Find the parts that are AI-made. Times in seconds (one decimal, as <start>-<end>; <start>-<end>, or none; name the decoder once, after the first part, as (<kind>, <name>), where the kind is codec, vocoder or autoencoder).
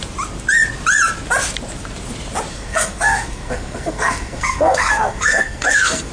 2.5-6.1 (codec, SNAC)